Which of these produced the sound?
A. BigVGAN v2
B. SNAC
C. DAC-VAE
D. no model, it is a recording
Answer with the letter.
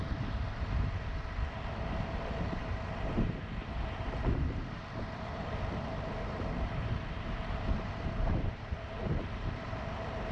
A